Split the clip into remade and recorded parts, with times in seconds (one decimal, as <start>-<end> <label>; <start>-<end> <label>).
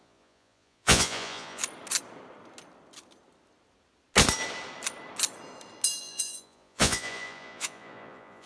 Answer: 0.0-1.6 remade; 1.6-6.0 recorded; 6.0-8.5 remade